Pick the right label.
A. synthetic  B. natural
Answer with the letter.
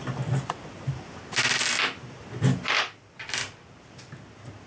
B